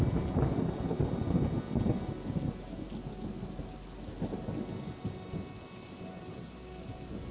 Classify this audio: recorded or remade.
recorded